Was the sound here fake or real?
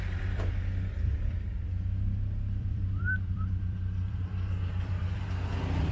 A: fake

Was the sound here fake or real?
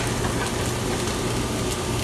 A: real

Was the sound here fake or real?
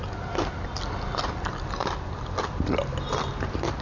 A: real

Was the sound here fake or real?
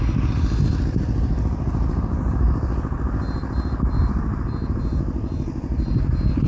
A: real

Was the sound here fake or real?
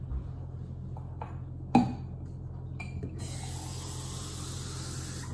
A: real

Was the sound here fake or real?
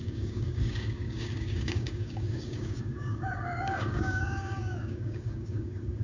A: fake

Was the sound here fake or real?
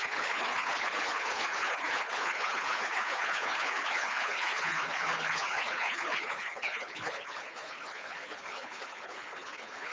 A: fake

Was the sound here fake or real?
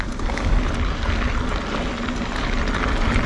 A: real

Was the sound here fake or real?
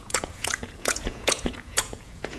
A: fake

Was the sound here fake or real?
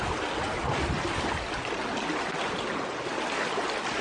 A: real